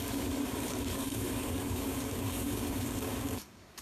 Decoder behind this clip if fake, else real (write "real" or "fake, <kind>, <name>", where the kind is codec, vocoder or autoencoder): fake, codec, DAC